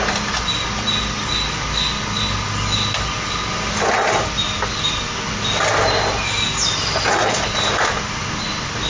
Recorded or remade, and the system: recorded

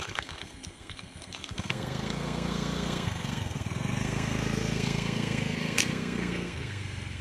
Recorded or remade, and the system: remade, codec, SNAC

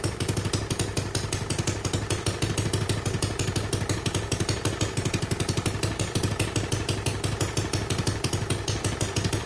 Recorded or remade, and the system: recorded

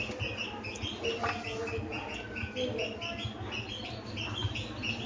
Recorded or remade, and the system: recorded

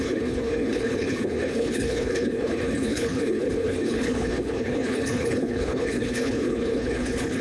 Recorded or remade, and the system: remade, codec, HILCodec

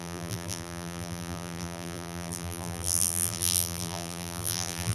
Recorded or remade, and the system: remade, vocoder, BigVGAN v2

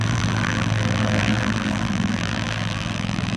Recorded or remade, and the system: remade, vocoder, BigVGAN v2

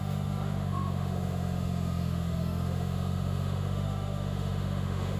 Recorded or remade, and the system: remade, autoencoder, DAC-VAE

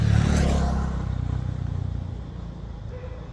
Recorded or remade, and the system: recorded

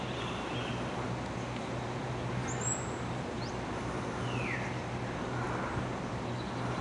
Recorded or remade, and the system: recorded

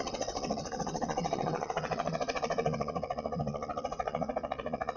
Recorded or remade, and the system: remade, vocoder, WaveNeXt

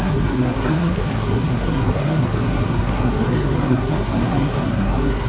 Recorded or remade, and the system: remade, codec, SNAC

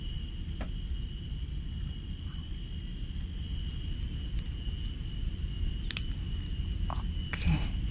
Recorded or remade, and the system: recorded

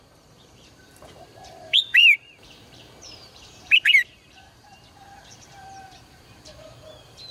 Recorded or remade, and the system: remade, vocoder, BigVGAN v2